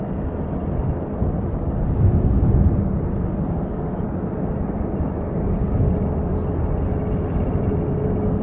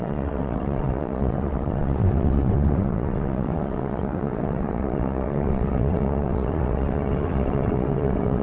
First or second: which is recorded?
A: first